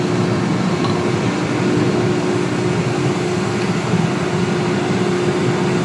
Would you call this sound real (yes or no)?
yes